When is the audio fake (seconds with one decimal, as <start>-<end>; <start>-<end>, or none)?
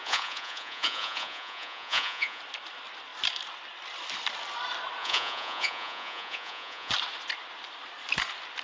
0.0-2.4; 5.0-6.9